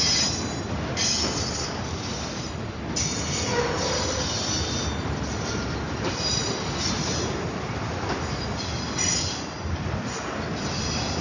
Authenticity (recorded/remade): recorded